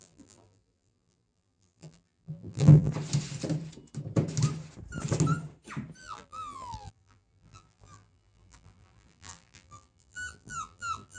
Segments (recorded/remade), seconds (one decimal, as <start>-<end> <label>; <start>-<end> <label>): 0.0-2.9 remade; 2.9-6.0 recorded; 6.0-11.2 remade